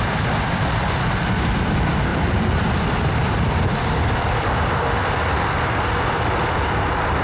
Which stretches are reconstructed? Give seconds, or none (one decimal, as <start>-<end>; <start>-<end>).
2.1-5.1